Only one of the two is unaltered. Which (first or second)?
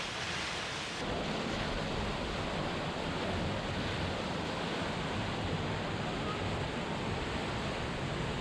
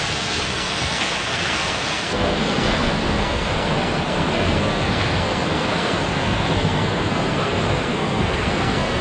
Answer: first